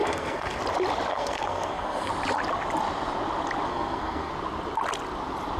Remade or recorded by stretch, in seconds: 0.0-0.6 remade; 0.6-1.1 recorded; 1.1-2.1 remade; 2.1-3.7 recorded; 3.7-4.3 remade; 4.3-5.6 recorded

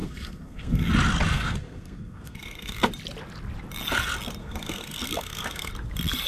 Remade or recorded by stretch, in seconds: 0.0-0.9 remade; 0.9-1.3 recorded; 1.3-2.9 remade; 2.9-4.4 recorded; 4.4-5.7 remade; 5.7-6.3 recorded

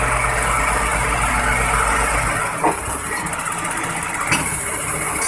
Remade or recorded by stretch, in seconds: 0.0-5.3 recorded

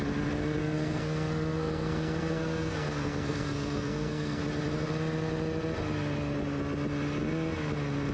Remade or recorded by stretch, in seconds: 0.0-0.6 recorded; 0.6-4.4 remade; 4.4-8.1 recorded

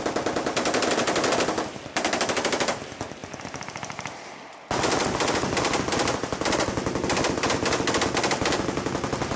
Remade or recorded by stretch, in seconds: 0.0-9.4 recorded

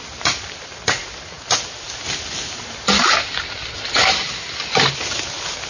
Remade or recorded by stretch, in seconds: 0.0-5.7 recorded